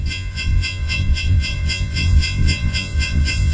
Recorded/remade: remade